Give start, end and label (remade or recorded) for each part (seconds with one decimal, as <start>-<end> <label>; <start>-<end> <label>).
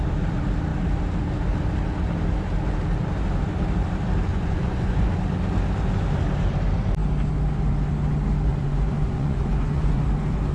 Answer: 0.0-4.3 recorded; 4.3-5.1 remade; 5.1-8.5 recorded; 8.5-10.0 remade; 10.0-10.5 recorded